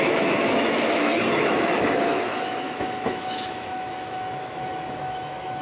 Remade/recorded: remade